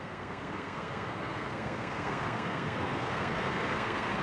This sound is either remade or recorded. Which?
remade